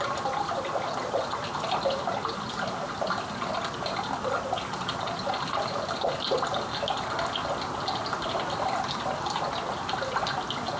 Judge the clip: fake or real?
real